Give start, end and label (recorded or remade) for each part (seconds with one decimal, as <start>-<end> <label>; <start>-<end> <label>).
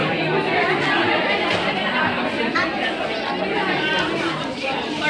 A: 0.0-5.1 recorded